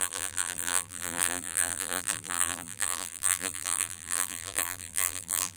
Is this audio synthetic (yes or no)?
yes